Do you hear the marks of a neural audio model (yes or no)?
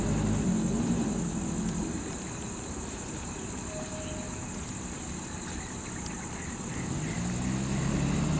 no